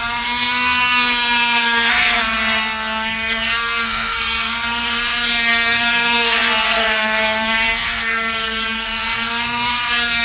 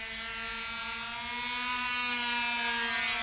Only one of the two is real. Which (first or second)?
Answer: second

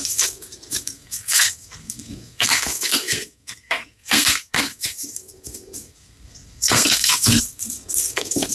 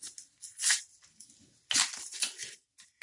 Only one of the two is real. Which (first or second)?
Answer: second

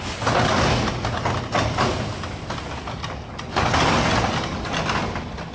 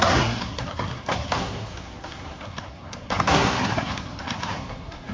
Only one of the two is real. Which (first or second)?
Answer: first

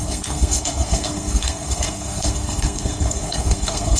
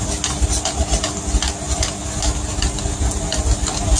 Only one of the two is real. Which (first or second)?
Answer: second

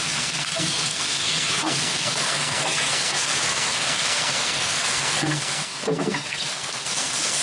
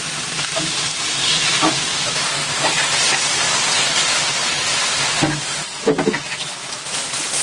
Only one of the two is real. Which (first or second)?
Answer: second